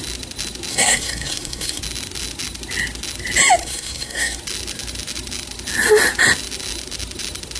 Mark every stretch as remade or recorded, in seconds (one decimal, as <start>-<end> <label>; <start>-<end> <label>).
0.0-0.7 recorded; 0.7-1.8 remade; 1.8-3.6 recorded; 3.6-4.4 remade; 4.4-7.6 recorded

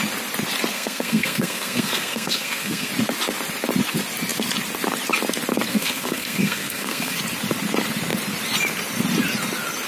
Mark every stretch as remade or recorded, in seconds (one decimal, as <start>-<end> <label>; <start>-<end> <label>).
0.0-0.7 recorded; 0.7-2.9 remade; 2.9-5.7 recorded; 5.7-7.2 remade; 7.2-9.9 recorded

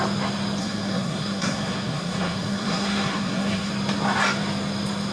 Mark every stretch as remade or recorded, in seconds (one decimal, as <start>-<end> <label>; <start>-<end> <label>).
0.0-0.6 recorded; 0.6-3.7 remade; 3.7-5.1 recorded

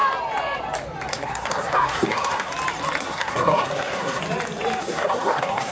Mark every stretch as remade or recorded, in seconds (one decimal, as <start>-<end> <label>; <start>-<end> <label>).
0.0-1.1 recorded; 1.1-2.5 remade; 2.5-3.0 recorded; 3.0-4.2 remade; 4.2-4.8 recorded; 4.8-5.7 remade

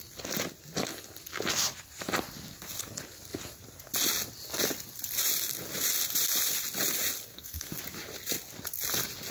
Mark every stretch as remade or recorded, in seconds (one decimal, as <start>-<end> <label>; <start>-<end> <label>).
0.0-7.3 recorded; 7.3-7.8 remade; 7.8-9.3 recorded